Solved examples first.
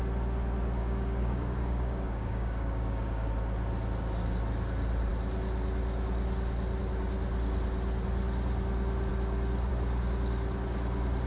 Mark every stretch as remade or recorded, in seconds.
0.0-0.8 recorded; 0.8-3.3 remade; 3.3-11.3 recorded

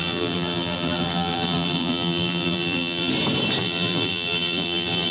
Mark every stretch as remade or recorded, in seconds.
0.0-3.1 remade; 3.1-3.6 recorded; 3.6-5.1 remade

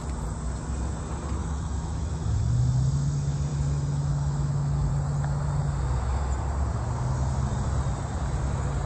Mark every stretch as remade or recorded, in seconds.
0.0-1.4 recorded; 1.4-2.4 remade; 2.4-3.5 recorded; 3.5-4.9 remade; 4.9-8.9 recorded

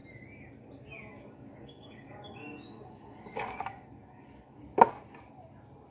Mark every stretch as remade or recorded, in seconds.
0.0-1.1 recorded; 1.1-4.6 remade; 4.6-5.9 recorded

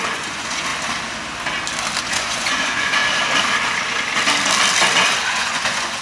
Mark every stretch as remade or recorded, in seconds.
0.0-0.7 remade; 0.7-2.0 recorded; 2.0-3.0 remade; 3.0-5.3 recorded; 5.3-6.0 remade

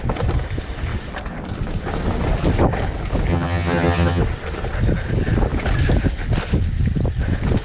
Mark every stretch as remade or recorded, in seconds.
0.0-3.3 recorded; 3.3-4.2 remade; 4.2-7.6 recorded

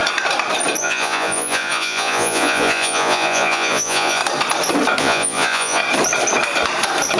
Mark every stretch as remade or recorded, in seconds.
0.0-0.8 recorded; 0.8-4.2 remade; 4.2-5.0 recorded; 5.0-5.8 remade; 5.8-7.2 recorded

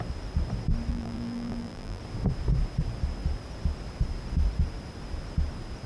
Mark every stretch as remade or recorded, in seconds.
0.0-0.9 recorded; 0.9-2.0 remade; 2.0-5.9 recorded